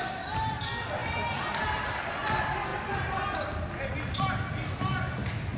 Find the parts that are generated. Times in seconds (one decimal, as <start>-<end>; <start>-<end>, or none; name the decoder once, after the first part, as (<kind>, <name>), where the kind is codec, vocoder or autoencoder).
none